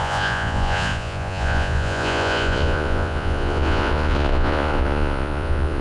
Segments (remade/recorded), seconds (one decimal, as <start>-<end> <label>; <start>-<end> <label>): 0.0-5.8 remade